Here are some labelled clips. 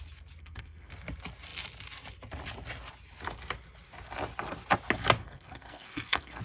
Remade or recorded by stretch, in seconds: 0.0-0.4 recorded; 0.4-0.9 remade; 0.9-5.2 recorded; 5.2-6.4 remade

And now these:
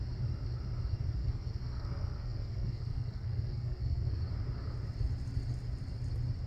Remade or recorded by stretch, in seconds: 0.0-1.2 recorded; 1.2-4.2 remade; 4.2-6.5 recorded

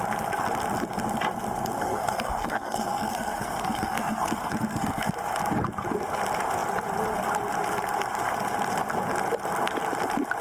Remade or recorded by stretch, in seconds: 0.0-1.8 recorded; 1.8-5.1 remade; 5.1-10.4 recorded

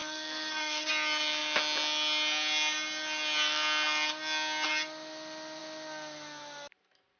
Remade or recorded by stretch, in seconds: 0.0-0.9 remade; 0.9-7.2 recorded

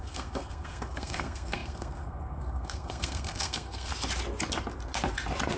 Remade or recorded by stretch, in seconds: 0.0-3.9 remade; 3.9-5.6 recorded

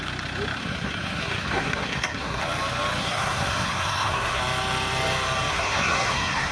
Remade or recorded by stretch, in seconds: 0.0-0.6 recorded; 0.6-2.4 remade; 2.4-3.0 recorded; 3.0-4.4 remade; 4.4-5.5 recorded; 5.5-6.5 remade

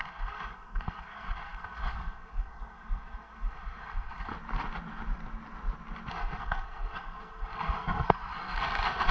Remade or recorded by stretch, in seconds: 0.0-4.3 remade; 4.3-6.1 recorded; 6.1-9.1 remade

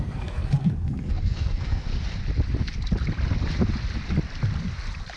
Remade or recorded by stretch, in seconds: 0.0-1.9 remade; 1.9-5.2 recorded